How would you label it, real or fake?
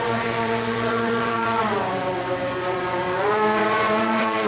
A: fake